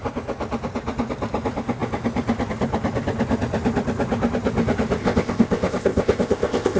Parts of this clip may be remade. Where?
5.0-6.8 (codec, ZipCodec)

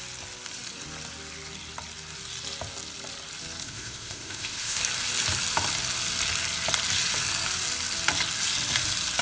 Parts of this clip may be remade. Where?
3.6-4.8 (codec, ZipCodec)

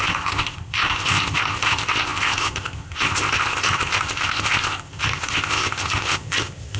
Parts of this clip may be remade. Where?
0.0-6.8 (codec, ZipCodec)

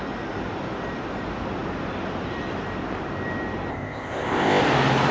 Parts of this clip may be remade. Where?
3.7-4.6 (codec, ZipCodec)

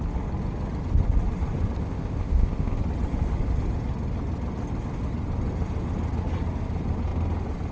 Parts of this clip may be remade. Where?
1.8-2.8 (codec, ZipCodec)

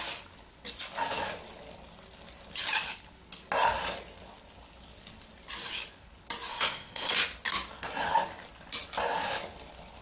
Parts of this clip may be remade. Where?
6.5-7.1 (codec, ZipCodec)